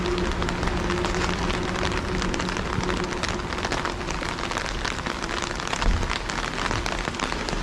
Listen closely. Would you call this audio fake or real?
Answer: real